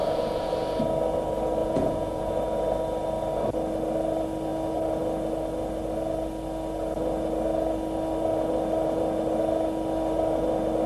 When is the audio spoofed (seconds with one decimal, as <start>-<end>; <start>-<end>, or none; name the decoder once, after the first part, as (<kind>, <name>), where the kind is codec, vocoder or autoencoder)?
0.0-0.5 (vocoder, Vocos); 1.6-2.3